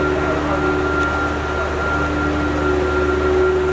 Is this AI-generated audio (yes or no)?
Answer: no